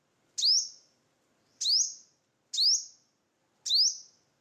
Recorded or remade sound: recorded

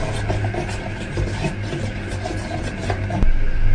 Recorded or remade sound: recorded